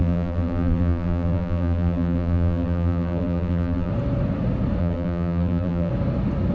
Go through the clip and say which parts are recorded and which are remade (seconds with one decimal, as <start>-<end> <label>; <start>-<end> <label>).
0.0-3.9 remade; 3.9-4.8 recorded; 4.8-5.9 remade; 5.9-6.5 recorded